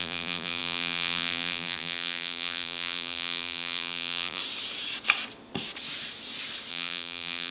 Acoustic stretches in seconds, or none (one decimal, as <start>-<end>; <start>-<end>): 4.4-6.7